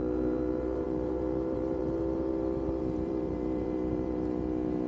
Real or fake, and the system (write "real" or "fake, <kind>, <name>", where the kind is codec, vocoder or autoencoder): fake, vocoder, BigVGAN v2